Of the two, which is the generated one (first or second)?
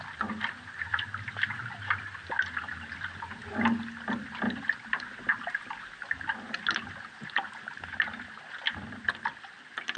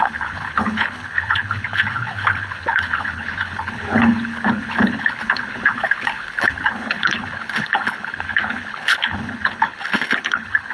second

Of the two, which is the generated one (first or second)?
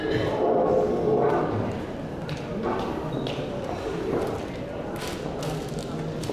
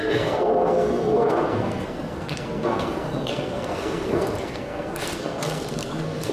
second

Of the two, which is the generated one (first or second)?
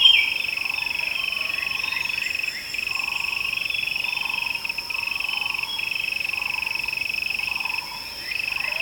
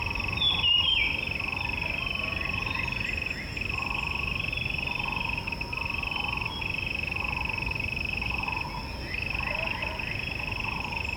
first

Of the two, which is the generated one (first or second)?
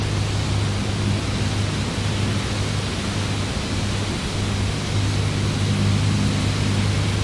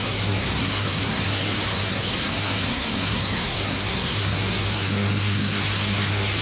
second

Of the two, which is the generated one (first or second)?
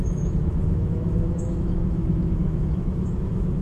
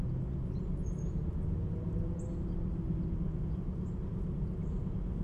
first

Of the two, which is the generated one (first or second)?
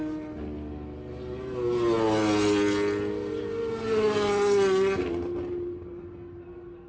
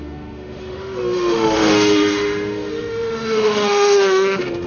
second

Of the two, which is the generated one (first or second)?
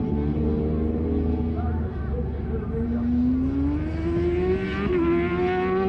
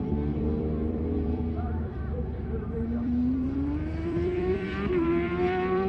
second